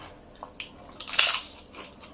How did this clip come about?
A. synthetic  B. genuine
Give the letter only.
B